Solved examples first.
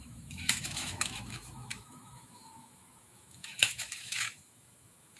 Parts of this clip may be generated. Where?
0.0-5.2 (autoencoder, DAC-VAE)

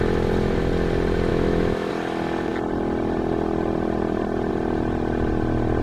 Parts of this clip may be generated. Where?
1.3-1.9 (autoencoder, DAC-VAE)

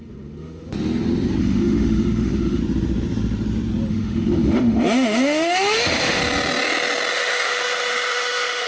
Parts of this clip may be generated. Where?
0.0-0.7 (autoencoder, DAC-VAE); 1.4-2.6; 3.9-6.2; 7.1-8.7

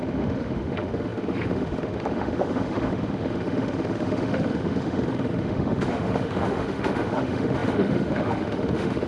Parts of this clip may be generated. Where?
0.0-9.1 (autoencoder, DAC-VAE)

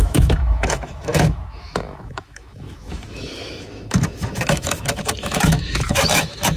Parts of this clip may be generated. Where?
0.0-6.6 (autoencoder, DAC-VAE)

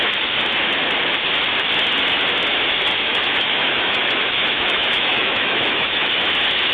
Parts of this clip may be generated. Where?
3.1-6.1 (autoencoder, DAC-VAE)